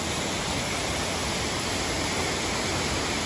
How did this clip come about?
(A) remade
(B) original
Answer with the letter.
B